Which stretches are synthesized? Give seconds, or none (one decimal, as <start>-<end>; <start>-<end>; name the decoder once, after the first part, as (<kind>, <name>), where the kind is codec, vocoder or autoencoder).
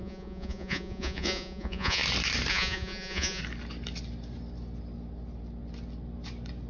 0.0-2.0 (vocoder, Vocos); 2.5-3.4